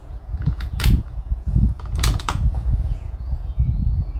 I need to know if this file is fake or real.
fake